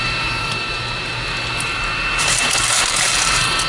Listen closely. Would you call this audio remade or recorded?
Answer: remade